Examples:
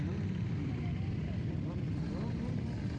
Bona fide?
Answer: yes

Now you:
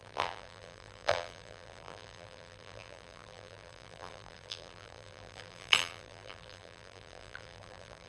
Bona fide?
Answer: no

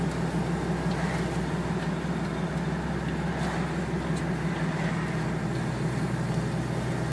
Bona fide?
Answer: yes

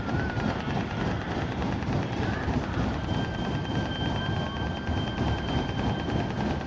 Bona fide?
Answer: no